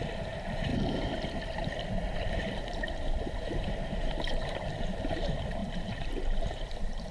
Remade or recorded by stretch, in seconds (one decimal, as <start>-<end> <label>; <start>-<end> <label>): 0.0-0.7 remade; 0.7-2.3 recorded; 2.3-7.1 remade